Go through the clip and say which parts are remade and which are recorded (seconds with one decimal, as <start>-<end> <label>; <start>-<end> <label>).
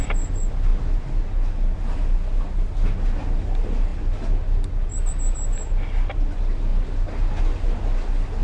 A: 0.0-8.4 recorded